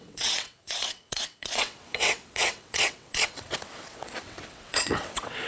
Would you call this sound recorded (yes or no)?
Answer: no